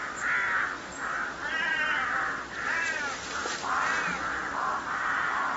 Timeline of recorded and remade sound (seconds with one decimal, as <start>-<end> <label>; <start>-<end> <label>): 0.0-5.6 recorded